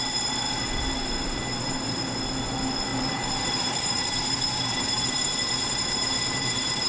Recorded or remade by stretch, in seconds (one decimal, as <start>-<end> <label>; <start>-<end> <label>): 0.0-2.9 recorded; 2.9-6.9 remade